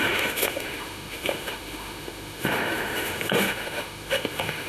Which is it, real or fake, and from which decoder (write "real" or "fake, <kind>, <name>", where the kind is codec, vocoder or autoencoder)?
fake, autoencoder, DAC-VAE